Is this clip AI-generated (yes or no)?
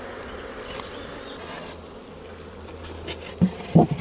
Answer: no